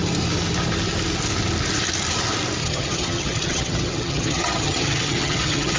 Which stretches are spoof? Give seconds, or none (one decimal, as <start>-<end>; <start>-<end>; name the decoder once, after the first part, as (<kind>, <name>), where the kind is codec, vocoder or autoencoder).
2.6-5.8 (vocoder, HiFi-GAN)

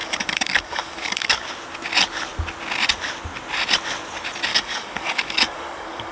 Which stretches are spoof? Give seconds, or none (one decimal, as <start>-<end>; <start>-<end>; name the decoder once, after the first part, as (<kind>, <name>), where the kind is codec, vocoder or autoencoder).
0.0-1.4 (codec, DAC); 4.5-6.1

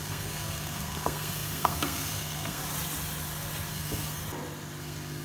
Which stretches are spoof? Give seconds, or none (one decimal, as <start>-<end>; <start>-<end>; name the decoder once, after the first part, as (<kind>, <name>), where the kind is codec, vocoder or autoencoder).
0.0-2.6 (codec, SNAC); 3.7-4.2; 4.8-5.2

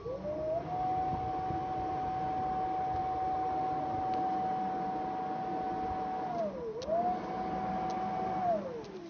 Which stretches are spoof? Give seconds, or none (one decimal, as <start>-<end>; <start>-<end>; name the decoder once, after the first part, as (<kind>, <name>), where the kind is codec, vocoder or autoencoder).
none

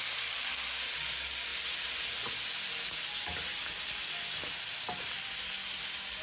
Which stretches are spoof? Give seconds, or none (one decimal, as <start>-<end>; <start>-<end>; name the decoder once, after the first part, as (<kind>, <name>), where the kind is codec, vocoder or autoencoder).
none

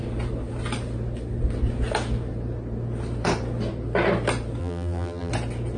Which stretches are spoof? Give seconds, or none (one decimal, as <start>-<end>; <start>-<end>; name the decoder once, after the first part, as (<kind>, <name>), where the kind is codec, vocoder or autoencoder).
4.6-5.3 (vocoder, BigVGAN v2)